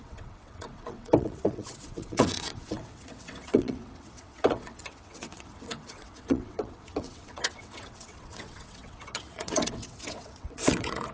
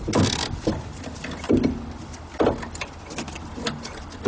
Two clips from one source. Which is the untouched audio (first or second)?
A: second